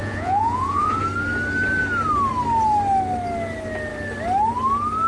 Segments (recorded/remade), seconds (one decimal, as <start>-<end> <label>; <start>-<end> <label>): 0.0-1.0 remade; 1.0-5.1 recorded